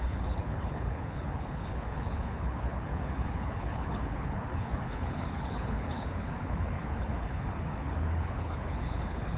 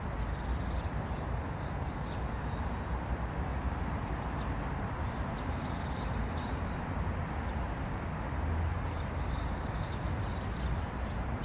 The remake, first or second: first